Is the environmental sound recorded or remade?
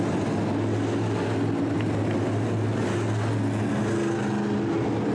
recorded